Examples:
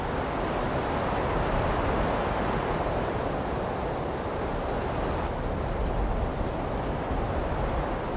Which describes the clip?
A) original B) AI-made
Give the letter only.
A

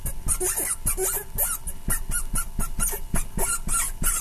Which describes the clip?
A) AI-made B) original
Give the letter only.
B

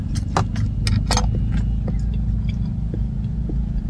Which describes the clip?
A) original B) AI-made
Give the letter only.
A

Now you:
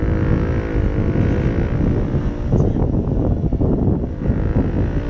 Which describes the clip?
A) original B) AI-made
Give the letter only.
A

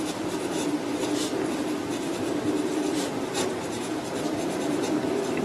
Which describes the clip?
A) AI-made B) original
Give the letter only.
A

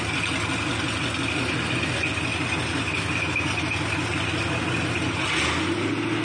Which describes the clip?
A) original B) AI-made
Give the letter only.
A